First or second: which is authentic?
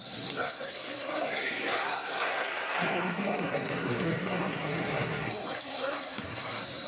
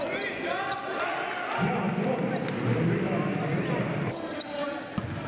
second